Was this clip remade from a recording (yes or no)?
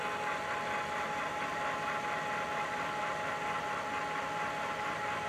no